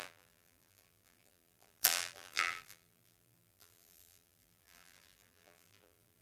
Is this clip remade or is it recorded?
remade